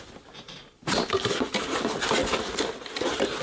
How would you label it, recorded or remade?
remade